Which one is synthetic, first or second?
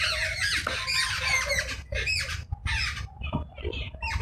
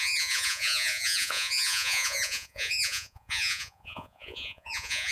second